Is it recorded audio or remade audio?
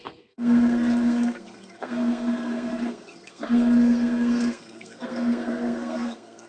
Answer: remade